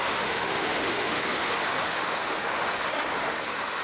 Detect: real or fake fake